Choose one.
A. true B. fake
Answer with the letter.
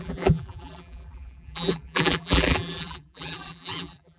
B